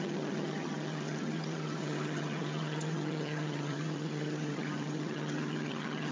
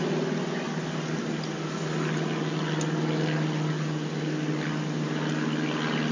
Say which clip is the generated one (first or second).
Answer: first